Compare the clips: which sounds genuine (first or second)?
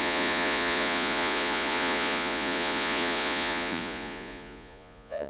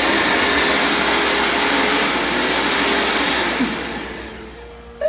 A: second